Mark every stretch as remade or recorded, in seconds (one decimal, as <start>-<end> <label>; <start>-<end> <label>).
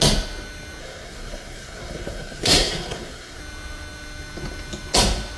0.0-0.8 recorded; 0.8-3.4 remade; 3.4-5.4 recorded